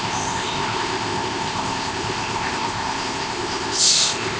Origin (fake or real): fake